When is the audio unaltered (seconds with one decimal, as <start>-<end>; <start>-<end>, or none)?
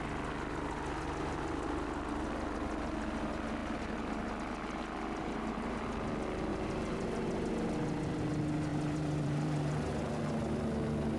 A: 0.0-5.2; 5.8-6.5; 7.5-8.7; 9.9-11.2